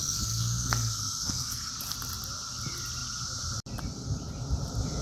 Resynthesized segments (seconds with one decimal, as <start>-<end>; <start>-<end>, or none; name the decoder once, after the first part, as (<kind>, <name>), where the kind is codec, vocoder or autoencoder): 0.0-1.7 (codec, SNAC)